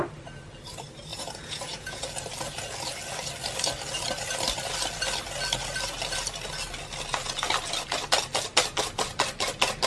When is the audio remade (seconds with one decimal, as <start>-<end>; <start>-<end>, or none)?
1.1-2.1